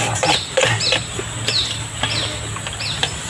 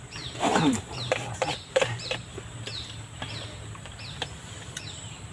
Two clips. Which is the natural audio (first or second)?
first